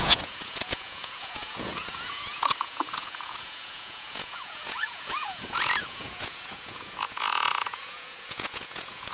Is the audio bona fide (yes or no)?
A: no